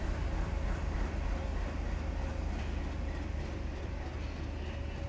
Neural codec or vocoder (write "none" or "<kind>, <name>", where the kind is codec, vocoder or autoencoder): none